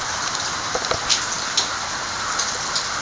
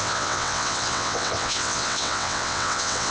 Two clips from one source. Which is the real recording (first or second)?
first